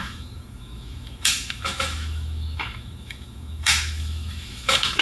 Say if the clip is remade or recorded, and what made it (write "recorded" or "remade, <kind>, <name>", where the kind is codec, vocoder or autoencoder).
remade, autoencoder, DAC-VAE